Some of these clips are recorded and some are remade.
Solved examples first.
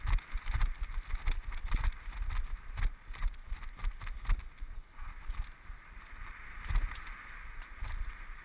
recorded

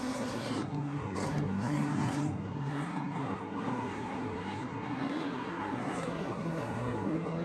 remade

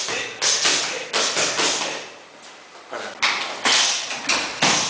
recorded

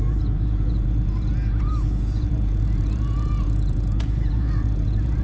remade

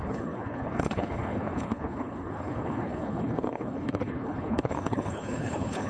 remade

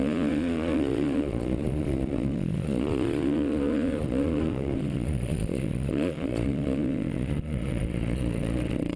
remade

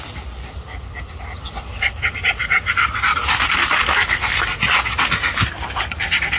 recorded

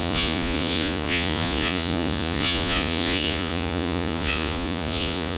remade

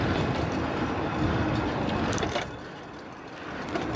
recorded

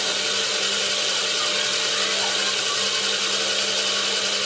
recorded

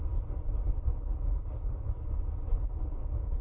recorded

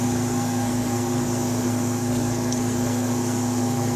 remade